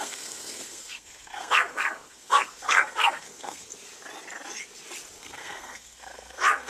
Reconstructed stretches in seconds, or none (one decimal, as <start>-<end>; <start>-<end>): 0.0-3.7; 5.2-6.7